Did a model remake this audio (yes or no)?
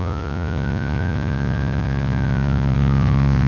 yes